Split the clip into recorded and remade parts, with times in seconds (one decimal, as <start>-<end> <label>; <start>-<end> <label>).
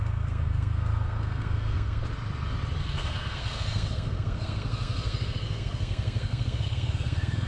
0.0-2.0 remade; 2.0-2.8 recorded; 2.8-7.5 remade